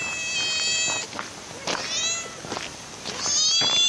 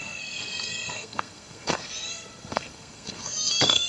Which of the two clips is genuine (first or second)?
first